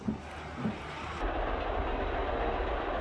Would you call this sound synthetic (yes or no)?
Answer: no